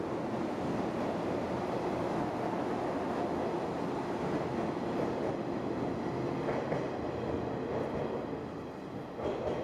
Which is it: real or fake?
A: real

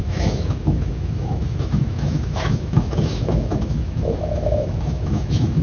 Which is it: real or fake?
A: fake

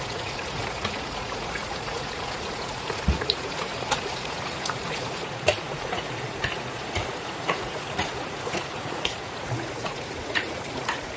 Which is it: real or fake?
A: fake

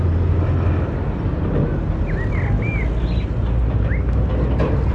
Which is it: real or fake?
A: real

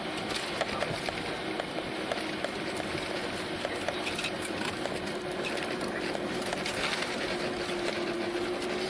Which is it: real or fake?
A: real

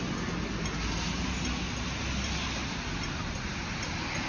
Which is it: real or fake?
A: real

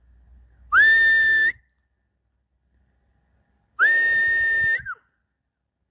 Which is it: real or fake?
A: real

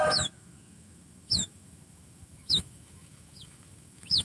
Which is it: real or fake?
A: fake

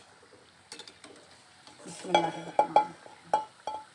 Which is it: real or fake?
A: real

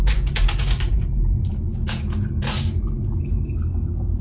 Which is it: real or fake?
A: fake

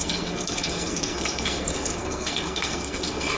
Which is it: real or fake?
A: fake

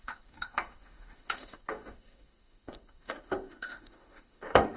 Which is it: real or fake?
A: fake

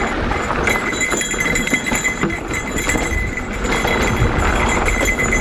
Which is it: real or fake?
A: real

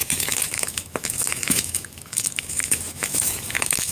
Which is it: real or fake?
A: fake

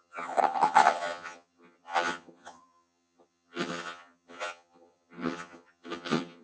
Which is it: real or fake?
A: fake